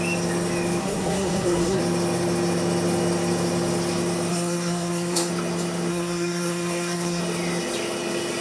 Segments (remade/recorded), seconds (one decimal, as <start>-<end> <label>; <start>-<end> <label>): 0.0-0.8 recorded; 0.8-1.8 remade; 1.8-4.3 recorded; 4.3-5.3 remade; 5.3-5.9 recorded; 5.9-7.2 remade; 7.2-8.4 recorded